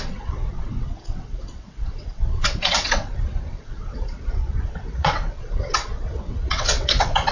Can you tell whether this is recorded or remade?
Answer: remade